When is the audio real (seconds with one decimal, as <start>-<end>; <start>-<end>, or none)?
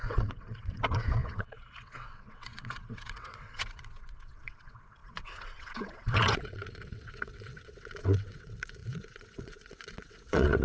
none